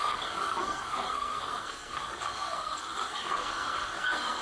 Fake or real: fake